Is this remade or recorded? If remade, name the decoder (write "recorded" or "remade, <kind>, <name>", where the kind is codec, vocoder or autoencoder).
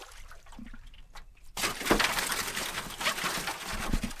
recorded